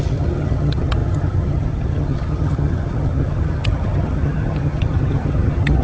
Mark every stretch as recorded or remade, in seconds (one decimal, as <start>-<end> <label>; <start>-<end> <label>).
0.0-5.8 remade